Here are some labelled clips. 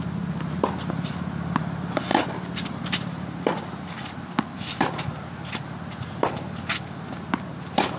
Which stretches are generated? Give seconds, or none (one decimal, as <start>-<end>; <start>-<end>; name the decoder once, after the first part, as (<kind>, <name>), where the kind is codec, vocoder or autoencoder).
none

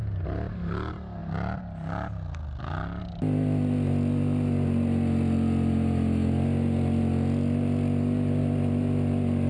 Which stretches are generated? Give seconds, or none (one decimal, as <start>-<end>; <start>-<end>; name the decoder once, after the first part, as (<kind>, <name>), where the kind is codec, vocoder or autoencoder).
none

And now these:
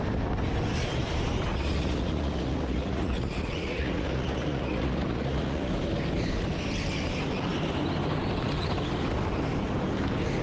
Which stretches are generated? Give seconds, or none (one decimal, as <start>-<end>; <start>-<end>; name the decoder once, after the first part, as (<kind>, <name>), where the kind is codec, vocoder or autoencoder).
1.5-5.7 (vocoder, Vocos)

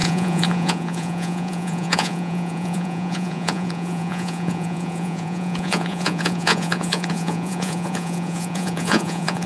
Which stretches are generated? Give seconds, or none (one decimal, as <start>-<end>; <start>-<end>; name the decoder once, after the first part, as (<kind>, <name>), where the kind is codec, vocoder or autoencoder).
0.0-9.5 (vocoder, Vocos)